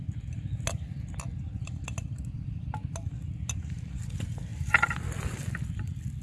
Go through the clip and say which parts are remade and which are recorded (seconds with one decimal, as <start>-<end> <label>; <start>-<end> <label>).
0.0-6.2 recorded